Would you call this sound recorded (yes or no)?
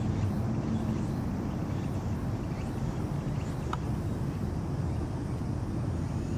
yes